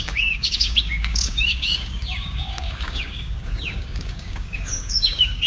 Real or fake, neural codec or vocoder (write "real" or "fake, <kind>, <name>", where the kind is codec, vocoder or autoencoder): fake, codec, DAC